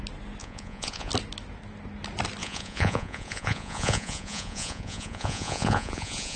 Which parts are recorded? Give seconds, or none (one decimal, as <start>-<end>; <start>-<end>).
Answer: 0.0-0.4; 1.1-2.4